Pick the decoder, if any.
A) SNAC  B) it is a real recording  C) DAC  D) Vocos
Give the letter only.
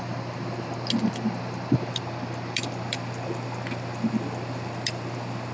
B